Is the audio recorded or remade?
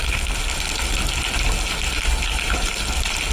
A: recorded